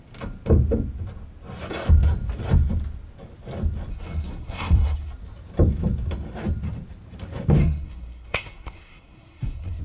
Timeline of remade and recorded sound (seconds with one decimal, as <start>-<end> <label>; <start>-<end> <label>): 0.0-3.9 recorded; 3.9-5.1 remade; 5.1-7.6 recorded; 7.6-9.8 remade